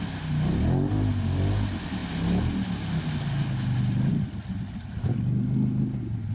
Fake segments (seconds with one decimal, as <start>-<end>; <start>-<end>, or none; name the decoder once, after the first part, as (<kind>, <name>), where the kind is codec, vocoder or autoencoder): none